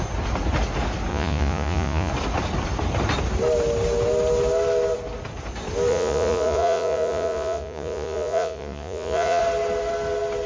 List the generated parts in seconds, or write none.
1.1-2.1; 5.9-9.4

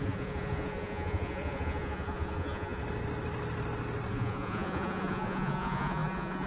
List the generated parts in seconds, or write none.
0.0-2.8; 4.1-6.5